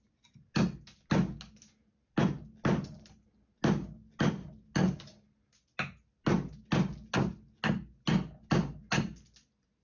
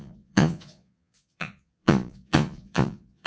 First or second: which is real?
first